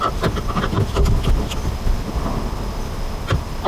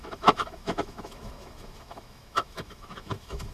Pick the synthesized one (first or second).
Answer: second